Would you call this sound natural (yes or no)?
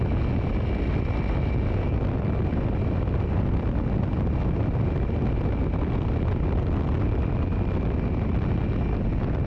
yes